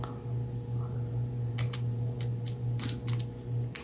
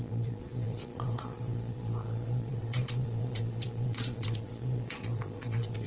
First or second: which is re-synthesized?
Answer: second